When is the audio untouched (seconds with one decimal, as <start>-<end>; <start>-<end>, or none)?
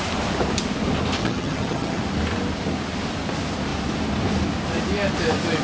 0.0-1.2; 2.0-5.6